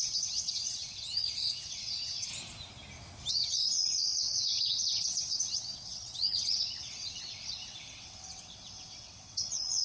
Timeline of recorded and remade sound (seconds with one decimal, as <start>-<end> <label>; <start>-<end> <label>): 0.0-2.3 remade; 2.3-3.3 recorded; 3.3-9.8 remade